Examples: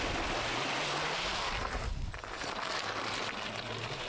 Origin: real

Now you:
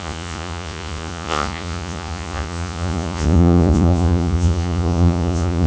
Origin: fake